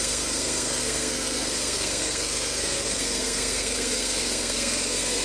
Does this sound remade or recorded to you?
remade